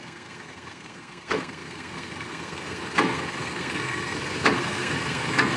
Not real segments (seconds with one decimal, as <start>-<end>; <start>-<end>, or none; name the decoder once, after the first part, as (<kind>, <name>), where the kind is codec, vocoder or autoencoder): 0.0-5.6 (codec, SNAC)